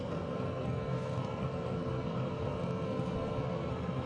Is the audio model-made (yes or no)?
yes